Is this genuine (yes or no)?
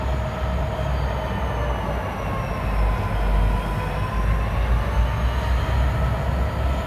yes